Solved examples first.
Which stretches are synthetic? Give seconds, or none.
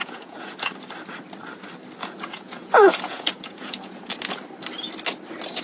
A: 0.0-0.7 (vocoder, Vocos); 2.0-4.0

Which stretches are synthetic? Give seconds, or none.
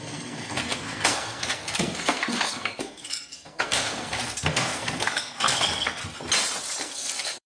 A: 0.0-6.0 (codec, SNAC); 6.8-7.5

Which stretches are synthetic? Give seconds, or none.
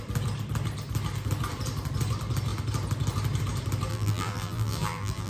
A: 3.9-5.3 (vocoder, BigVGAN v2)